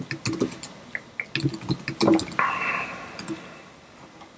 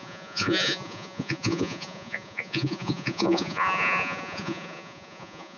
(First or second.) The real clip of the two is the first